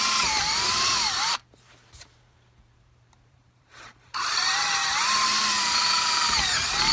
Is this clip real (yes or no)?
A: no